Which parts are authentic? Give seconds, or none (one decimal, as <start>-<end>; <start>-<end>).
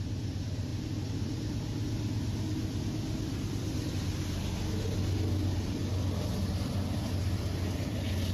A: 0.0-8.3